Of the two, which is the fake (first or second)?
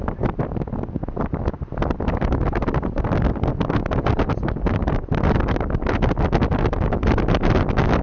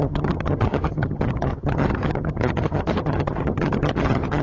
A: second